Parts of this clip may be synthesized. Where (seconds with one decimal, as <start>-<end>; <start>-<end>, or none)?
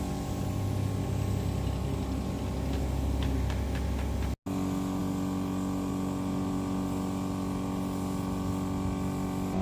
none